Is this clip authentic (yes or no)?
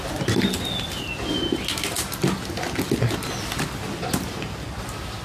yes